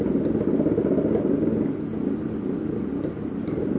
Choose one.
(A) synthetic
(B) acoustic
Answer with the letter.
B